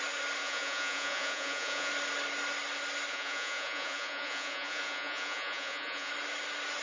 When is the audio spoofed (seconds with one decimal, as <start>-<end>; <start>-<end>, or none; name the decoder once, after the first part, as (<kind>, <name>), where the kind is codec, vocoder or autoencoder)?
0.4-1.9 (vocoder, Vocos); 3.1-6.1